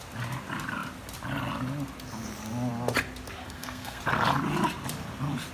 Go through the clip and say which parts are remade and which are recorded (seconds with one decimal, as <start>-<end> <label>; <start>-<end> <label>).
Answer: 0.0-3.4 recorded; 3.4-4.0 remade; 4.0-5.5 recorded